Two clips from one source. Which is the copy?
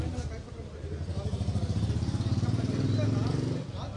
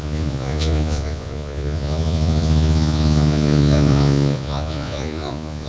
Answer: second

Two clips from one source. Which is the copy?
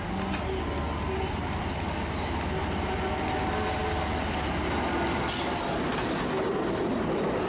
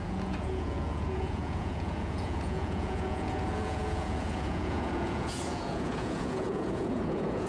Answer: second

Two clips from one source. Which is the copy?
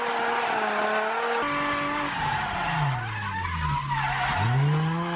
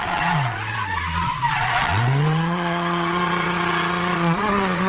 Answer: second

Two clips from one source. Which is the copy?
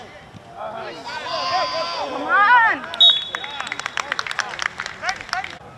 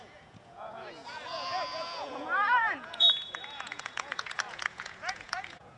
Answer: second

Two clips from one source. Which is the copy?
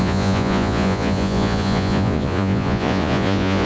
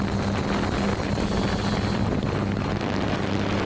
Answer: first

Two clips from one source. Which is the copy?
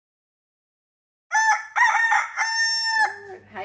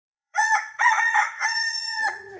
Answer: second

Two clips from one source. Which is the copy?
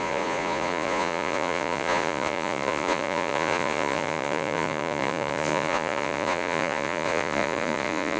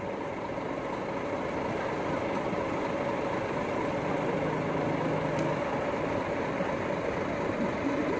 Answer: first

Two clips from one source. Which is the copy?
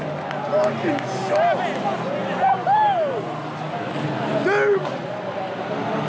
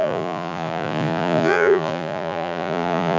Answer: second